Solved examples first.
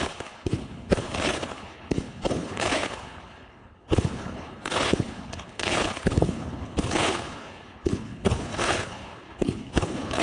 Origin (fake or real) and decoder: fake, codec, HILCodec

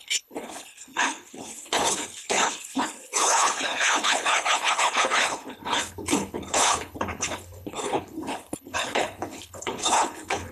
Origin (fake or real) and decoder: fake, codec, HILCodec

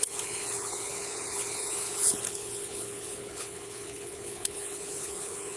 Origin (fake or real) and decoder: fake, codec, HILCodec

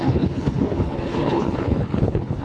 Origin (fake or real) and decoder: fake, codec, HILCodec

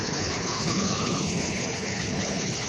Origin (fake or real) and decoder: fake, codec, HILCodec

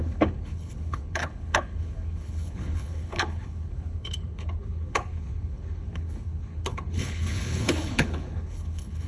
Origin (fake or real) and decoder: fake, codec, HILCodec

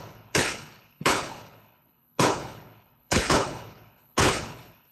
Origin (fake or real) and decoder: fake, codec, HILCodec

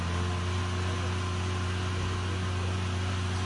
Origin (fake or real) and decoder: real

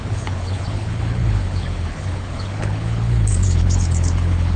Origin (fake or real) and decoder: fake, codec, HILCodec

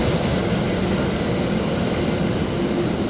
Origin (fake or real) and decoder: real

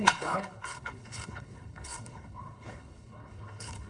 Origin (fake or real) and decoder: fake, codec, HILCodec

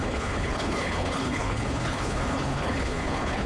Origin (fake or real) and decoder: fake, codec, HILCodec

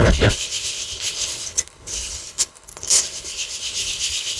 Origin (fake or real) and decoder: fake, codec, HILCodec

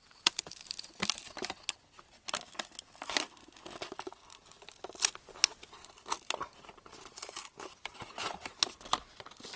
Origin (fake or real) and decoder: real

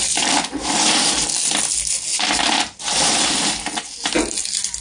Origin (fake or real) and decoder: real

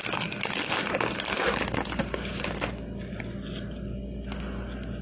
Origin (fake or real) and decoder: real